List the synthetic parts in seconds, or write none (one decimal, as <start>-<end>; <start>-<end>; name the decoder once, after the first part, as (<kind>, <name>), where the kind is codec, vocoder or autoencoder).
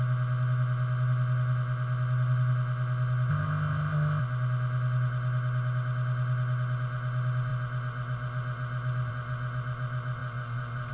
3.3-4.2 (codec, ZipCodec)